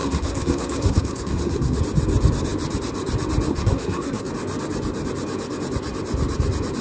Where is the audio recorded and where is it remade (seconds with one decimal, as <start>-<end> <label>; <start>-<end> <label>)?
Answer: 0.0-1.8 remade; 1.8-3.5 recorded; 3.5-4.3 remade; 4.3-6.8 recorded